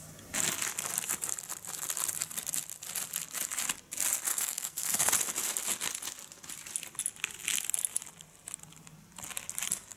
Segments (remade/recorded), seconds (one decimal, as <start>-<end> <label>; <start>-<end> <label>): 0.0-4.3 recorded; 4.3-5.1 remade; 5.1-10.0 recorded